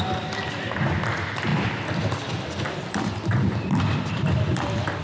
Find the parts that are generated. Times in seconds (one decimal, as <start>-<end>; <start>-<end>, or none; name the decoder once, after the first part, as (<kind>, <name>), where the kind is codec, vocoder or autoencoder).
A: none